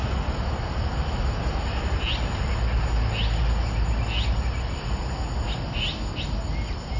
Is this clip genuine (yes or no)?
yes